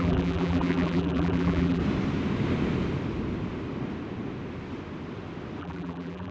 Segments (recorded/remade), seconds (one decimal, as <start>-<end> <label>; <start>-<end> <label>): 0.0-1.8 remade; 1.8-5.6 recorded; 5.6-6.3 remade